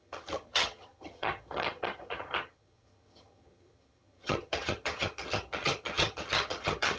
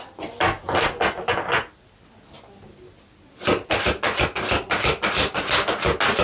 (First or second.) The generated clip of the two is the first